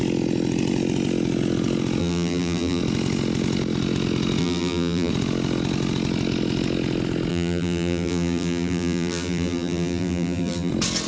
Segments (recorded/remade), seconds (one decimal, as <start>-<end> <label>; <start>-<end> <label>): 0.0-2.0 recorded; 2.0-2.8 remade; 2.8-4.4 recorded; 4.4-5.1 remade; 5.1-7.3 recorded; 7.3-10.7 remade; 10.7-11.1 recorded